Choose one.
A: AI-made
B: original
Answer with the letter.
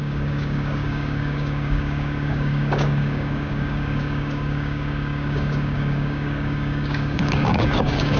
A